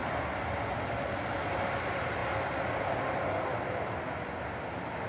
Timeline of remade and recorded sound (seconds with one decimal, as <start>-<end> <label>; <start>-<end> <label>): 0.0-5.1 recorded